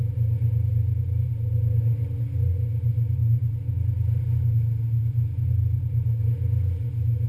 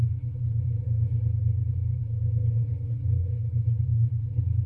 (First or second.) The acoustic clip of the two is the first